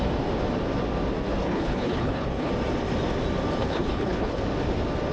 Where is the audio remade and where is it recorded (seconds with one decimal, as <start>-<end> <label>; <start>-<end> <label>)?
0.0-1.4 recorded; 1.4-2.5 remade; 2.5-3.6 recorded; 3.6-4.4 remade; 4.4-5.1 recorded